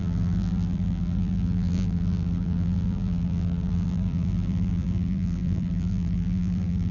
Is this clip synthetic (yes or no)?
yes